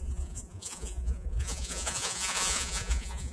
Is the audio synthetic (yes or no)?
yes